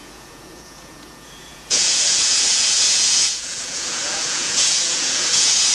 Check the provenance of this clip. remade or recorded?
remade